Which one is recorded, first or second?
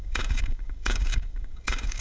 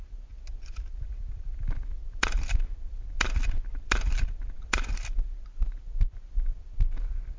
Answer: second